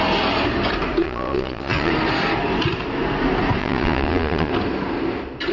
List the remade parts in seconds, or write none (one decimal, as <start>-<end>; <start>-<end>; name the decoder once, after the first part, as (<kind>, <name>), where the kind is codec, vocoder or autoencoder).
1.0-1.9 (vocoder, Vocos); 3.6-4.5